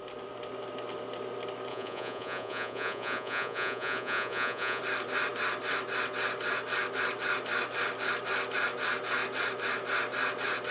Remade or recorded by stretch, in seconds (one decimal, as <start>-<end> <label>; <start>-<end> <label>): 0.0-1.7 recorded; 1.7-4.8 remade; 4.8-10.7 recorded